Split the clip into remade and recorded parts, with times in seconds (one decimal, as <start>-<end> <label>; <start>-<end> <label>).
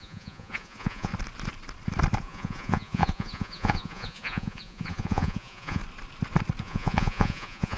0.0-1.1 remade; 1.1-2.2 recorded; 2.2-5.8 remade; 5.8-6.6 recorded; 6.6-7.8 remade